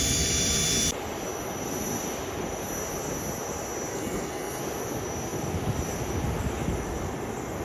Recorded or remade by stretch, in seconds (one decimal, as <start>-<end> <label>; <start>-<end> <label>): 0.0-3.9 recorded; 3.9-4.6 remade; 4.6-7.6 recorded